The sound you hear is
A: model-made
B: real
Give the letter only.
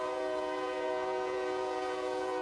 A